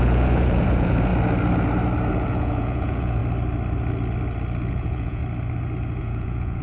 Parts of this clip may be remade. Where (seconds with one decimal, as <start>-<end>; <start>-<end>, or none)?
0.0-1.1; 2.1-3.2; 4.7-5.2; 6.0-6.6